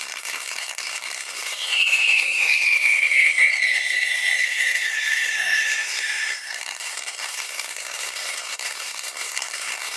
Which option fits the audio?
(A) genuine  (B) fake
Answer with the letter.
B